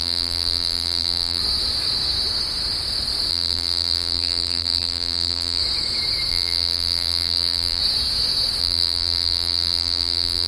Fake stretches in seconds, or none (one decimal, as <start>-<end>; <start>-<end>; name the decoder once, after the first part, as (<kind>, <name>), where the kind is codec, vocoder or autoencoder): 0.0-1.4 (vocoder, BigVGAN v2); 3.3-5.6; 6.3-7.8; 8.6-10.5